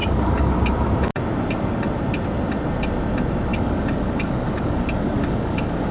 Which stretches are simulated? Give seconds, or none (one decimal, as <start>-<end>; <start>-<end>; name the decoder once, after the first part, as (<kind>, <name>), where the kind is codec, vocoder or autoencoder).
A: 0.0-0.5 (codec, DAC); 3.5-5.9